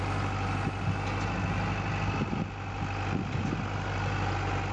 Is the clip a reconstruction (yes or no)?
no